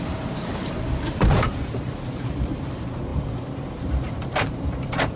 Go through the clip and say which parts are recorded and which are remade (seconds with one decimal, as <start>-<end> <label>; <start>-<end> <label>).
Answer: 0.0-5.2 remade